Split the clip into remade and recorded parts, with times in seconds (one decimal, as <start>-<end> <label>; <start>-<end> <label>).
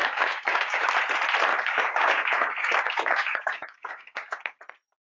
0.0-0.9 remade; 0.9-1.5 recorded; 1.5-4.6 remade; 4.6-5.2 recorded